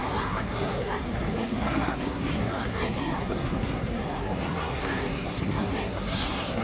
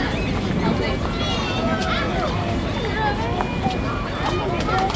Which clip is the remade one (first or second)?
first